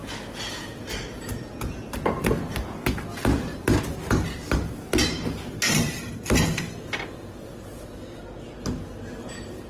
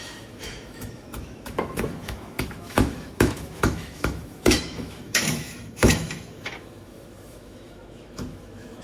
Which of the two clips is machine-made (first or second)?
second